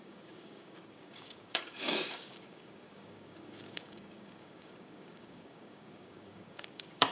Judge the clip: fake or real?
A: fake